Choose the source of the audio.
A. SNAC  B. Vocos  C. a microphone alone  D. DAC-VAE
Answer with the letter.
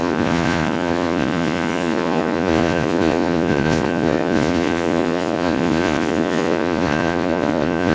B